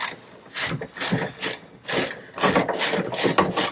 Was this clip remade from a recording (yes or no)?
no